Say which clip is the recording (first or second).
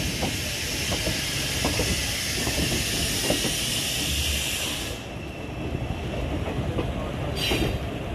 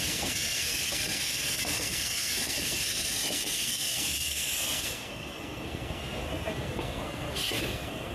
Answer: first